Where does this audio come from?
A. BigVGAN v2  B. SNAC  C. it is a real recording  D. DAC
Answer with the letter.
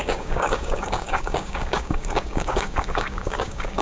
D